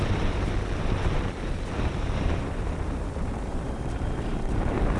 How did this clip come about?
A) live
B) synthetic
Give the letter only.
B